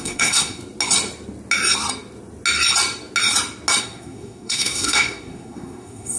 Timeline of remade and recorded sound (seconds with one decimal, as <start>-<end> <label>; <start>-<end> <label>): 0.0-0.6 remade; 0.6-3.8 recorded; 3.8-6.2 remade